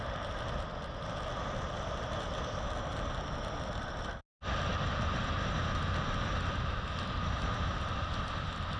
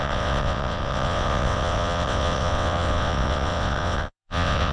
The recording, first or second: first